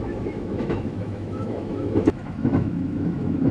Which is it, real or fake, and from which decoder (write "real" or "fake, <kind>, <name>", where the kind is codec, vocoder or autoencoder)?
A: fake, autoencoder, DAC-VAE